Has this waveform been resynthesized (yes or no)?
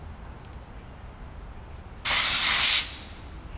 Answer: no